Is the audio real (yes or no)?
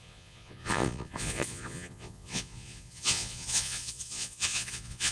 no